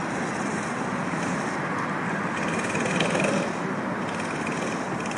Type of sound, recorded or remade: recorded